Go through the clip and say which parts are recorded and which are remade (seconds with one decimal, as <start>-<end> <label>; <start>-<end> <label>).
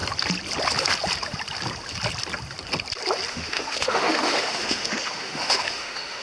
0.0-3.3 recorded; 3.3-6.2 remade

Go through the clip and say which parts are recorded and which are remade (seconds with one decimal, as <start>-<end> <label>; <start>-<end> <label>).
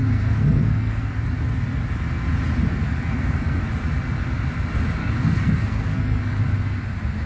0.0-1.1 remade; 1.1-2.7 recorded; 2.7-3.6 remade; 3.6-5.0 recorded; 5.0-6.4 remade; 6.4-7.3 recorded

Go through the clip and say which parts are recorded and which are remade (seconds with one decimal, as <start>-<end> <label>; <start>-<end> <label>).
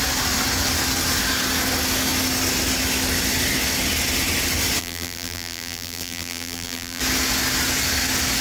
0.0-4.8 recorded; 4.8-7.0 remade; 7.0-8.4 recorded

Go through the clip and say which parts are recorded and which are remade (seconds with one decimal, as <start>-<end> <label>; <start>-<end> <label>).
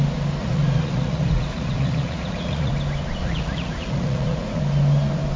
0.0-0.4 recorded; 0.4-2.7 remade; 2.7-3.2 recorded; 3.2-4.6 remade; 4.6-5.4 recorded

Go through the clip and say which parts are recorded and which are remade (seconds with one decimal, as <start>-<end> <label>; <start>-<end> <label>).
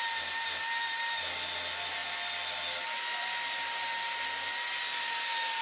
0.0-5.6 recorded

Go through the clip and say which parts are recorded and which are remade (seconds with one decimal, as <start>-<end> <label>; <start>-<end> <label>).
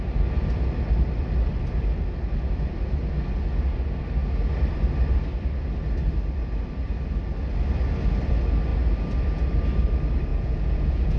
0.0-10.3 recorded; 10.3-11.2 remade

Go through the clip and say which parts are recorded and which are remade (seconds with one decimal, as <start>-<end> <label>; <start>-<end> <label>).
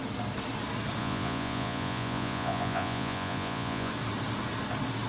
0.0-1.0 recorded; 1.0-3.9 remade; 3.9-5.1 recorded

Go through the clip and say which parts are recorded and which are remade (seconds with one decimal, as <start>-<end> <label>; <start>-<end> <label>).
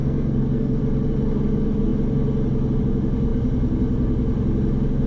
0.0-0.8 remade; 0.8-5.1 recorded